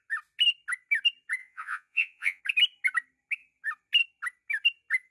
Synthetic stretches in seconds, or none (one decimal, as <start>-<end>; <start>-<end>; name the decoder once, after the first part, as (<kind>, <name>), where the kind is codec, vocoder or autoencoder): 1.4-2.4 (vocoder, Vocos)